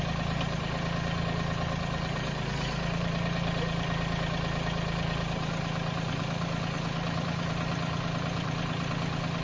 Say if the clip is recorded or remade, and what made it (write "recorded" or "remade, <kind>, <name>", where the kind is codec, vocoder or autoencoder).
remade, vocoder, BigVGAN v2